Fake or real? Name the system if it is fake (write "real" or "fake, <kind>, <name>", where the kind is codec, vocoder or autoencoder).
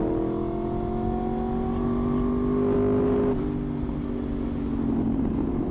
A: real